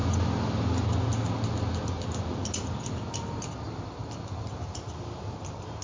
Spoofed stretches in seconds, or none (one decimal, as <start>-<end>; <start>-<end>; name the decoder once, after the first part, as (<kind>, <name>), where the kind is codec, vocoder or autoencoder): none